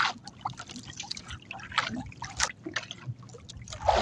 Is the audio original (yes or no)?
yes